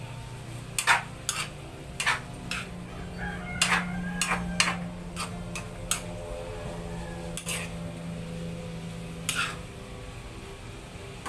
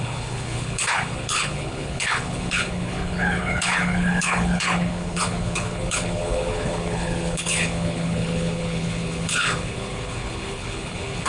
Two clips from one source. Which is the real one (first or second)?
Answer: first